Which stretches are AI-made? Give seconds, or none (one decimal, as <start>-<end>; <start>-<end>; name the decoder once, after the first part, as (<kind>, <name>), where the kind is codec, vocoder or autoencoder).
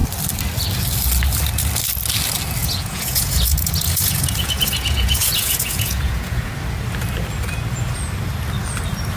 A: 2.6-6.5 (vocoder, Vocos)